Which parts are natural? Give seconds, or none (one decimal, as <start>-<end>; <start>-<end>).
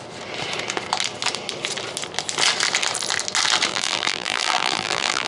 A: 0.0-3.7